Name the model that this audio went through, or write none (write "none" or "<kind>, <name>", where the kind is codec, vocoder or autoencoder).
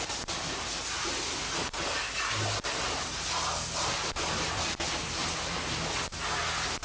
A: none